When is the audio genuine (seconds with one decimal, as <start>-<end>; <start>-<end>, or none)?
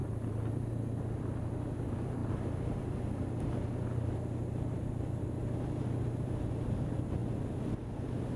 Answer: 0.0-8.4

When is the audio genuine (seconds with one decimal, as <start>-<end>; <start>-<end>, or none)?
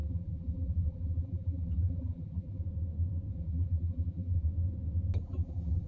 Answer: 2.6-3.3; 4.5-5.2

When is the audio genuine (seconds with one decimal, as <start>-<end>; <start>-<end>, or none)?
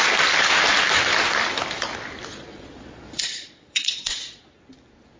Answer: 0.0-2.3; 4.6-5.2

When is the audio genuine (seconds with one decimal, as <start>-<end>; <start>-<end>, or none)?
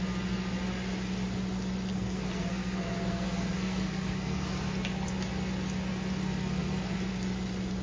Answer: 0.0-1.9; 4.5-7.8